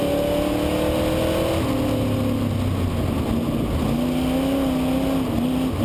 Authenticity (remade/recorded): recorded